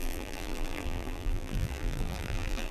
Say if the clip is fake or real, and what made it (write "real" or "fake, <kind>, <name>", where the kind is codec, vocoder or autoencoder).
fake, vocoder, BigVGAN v2